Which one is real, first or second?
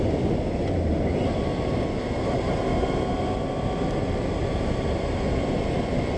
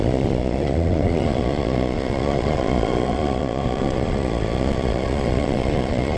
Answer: first